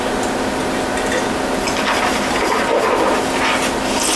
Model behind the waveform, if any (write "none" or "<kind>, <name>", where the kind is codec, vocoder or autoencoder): none